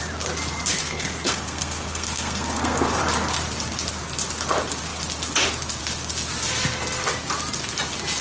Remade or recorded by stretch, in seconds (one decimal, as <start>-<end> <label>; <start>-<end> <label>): 0.0-0.8 recorded; 0.8-3.0 remade; 3.0-8.2 recorded